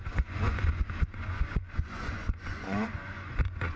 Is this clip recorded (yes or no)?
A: no